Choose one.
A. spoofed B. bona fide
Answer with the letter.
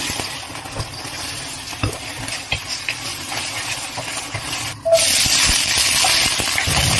B